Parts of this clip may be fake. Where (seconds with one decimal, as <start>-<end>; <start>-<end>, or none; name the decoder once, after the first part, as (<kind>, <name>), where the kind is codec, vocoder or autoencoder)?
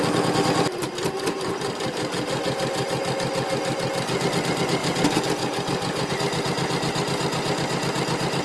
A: none